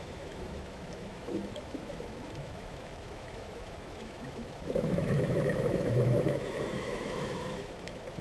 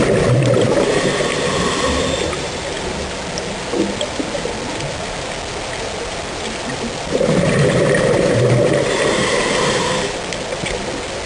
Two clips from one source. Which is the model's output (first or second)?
first